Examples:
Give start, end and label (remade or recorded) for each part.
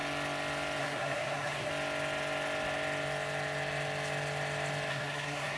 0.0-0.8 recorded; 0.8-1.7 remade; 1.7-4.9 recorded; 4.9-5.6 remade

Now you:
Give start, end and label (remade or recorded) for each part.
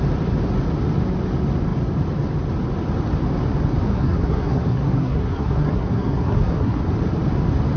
0.0-3.9 recorded; 3.9-6.8 remade; 6.8-7.8 recorded